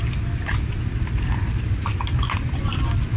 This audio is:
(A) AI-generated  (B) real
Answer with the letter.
B